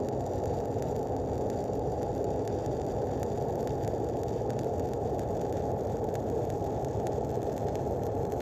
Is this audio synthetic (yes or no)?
no